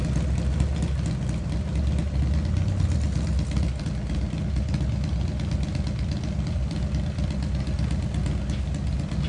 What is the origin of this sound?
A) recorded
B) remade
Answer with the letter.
A